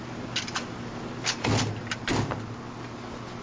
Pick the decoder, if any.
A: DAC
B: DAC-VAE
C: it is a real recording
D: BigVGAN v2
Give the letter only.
C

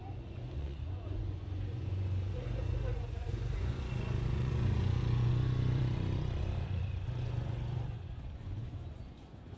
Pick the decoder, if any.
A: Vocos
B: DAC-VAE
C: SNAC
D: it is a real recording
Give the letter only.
A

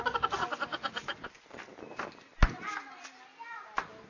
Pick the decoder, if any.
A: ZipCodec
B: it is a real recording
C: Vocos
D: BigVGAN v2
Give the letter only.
B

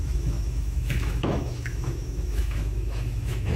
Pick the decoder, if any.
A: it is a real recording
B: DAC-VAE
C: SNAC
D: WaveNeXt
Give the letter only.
B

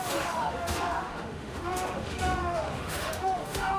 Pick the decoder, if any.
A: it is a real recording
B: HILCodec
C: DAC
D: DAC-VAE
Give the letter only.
D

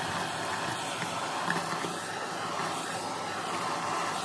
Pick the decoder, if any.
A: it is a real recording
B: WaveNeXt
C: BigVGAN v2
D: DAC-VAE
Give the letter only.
A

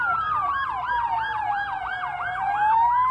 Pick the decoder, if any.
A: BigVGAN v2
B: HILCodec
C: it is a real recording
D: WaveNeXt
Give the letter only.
A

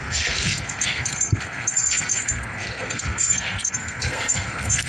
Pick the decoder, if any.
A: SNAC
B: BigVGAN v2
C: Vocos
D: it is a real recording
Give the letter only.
A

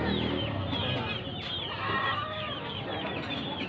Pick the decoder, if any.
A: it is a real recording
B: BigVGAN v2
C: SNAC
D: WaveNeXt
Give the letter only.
A